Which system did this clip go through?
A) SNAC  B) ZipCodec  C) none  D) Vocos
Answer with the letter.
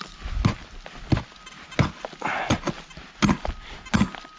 C